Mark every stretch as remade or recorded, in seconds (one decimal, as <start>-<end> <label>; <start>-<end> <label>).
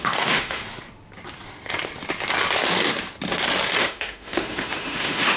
0.0-0.6 remade; 0.6-3.8 recorded; 3.8-5.4 remade